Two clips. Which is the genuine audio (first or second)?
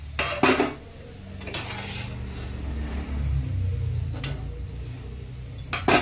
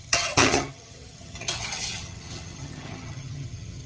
first